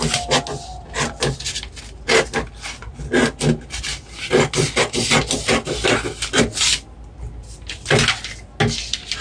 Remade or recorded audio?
recorded